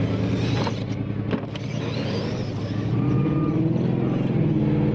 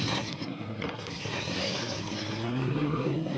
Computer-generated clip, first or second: second